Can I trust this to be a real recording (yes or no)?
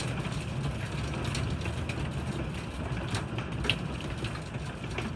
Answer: yes